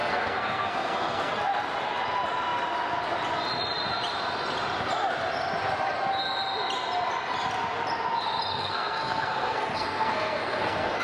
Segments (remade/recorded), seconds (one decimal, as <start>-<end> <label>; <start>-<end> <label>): 0.0-1.3 remade; 1.3-8.5 recorded; 8.5-11.0 remade